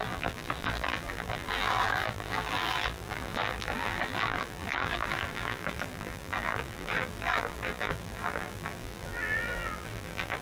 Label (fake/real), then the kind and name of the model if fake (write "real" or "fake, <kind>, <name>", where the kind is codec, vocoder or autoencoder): fake, vocoder, BigVGAN v2